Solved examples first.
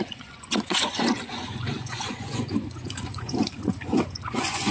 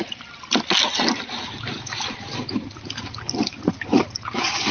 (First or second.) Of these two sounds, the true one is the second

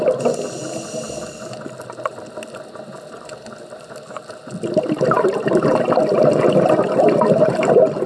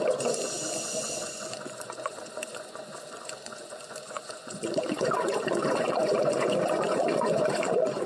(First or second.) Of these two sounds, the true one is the first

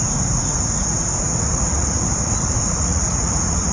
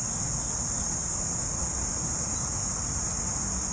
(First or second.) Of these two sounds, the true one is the second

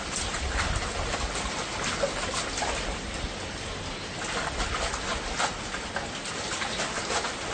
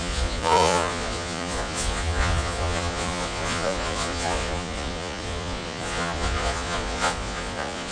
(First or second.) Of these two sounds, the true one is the first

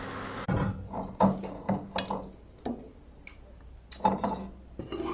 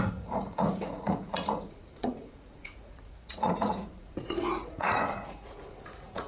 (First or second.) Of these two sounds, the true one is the first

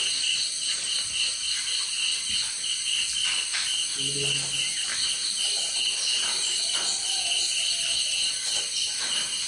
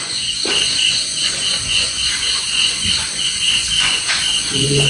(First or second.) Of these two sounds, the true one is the first